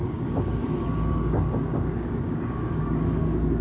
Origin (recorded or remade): remade